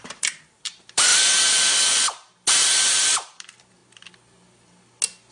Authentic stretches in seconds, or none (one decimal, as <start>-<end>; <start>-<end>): 1.1-2.5; 3.8-5.3